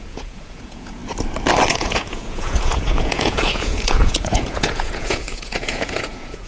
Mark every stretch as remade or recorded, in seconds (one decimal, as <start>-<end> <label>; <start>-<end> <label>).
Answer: 0.0-1.0 remade; 1.0-1.7 recorded; 1.7-6.5 remade